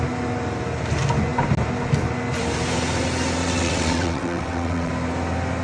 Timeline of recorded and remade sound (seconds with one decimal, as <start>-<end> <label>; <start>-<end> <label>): 0.0-3.4 recorded; 3.4-4.9 remade; 4.9-5.6 recorded